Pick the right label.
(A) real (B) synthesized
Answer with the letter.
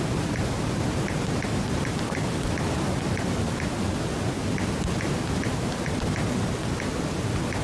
A